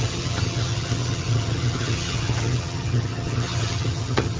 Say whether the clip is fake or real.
fake